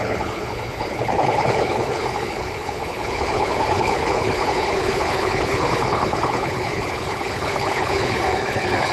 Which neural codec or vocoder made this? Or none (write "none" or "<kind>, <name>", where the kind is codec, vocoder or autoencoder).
codec, HILCodec